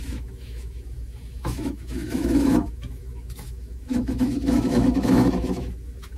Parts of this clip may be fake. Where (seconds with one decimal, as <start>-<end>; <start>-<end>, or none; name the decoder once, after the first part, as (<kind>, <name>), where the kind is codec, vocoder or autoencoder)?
0.0-6.2 (autoencoder, DAC-VAE)